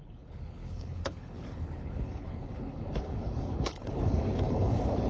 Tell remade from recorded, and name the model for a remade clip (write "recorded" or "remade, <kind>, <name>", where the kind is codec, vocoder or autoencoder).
remade, codec, HILCodec